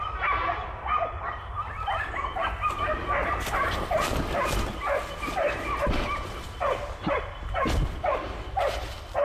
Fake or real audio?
real